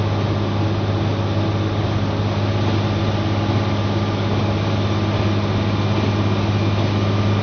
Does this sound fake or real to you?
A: real